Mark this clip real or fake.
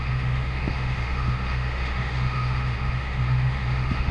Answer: fake